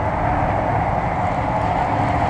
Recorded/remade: recorded